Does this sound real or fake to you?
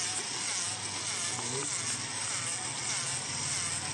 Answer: real